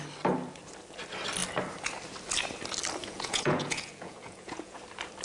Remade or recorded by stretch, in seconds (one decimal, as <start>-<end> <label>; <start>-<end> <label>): 0.0-3.0 recorded; 3.0-4.8 remade; 4.8-5.2 recorded